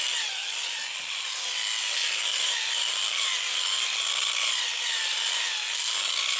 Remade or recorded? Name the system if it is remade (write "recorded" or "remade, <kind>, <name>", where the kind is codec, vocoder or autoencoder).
recorded